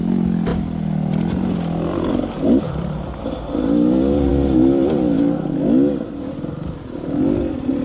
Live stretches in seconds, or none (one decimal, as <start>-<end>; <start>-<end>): 0.0-7.8